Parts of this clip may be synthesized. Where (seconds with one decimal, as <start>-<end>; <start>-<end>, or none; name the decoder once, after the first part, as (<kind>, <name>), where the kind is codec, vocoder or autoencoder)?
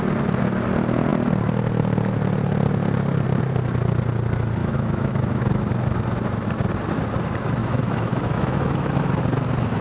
4.6-5.5 (autoencoder, DAC-VAE); 7.6-9.2